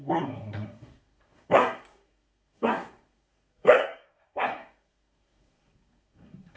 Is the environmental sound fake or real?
fake